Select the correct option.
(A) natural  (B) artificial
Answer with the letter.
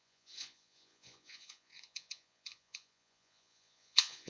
B